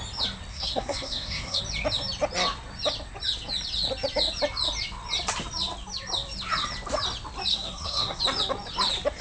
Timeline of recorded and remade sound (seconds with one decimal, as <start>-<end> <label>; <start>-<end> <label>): 0.0-0.5 recorded; 0.5-1.6 remade; 1.6-7.5 recorded; 7.5-8.2 remade; 8.2-9.2 recorded